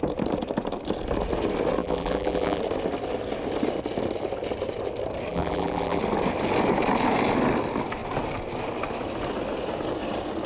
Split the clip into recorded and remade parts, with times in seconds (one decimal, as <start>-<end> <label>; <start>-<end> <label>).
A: 0.0-1.8 recorded; 1.8-2.6 remade; 2.6-5.3 recorded; 5.3-6.0 remade; 6.0-10.5 recorded